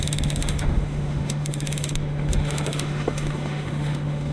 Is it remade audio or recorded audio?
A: remade